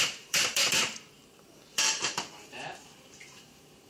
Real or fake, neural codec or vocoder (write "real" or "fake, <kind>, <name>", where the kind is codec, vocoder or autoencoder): fake, vocoder, BigVGAN v2